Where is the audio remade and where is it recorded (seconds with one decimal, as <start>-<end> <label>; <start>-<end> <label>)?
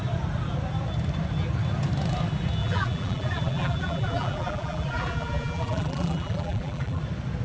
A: 0.0-2.6 recorded; 2.6-7.0 remade; 7.0-7.4 recorded